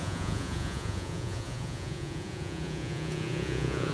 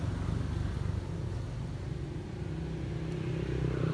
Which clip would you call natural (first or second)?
second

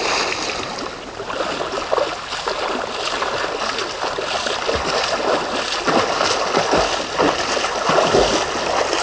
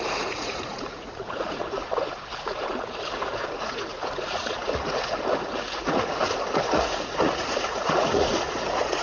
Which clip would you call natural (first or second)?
first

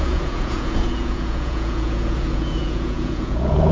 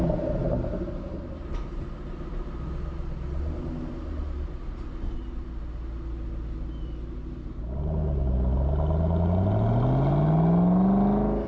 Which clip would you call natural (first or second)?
second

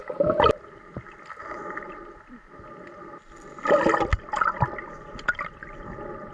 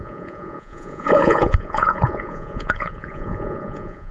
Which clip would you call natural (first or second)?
first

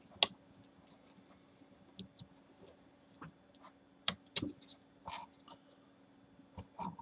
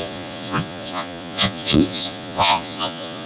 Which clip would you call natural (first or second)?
first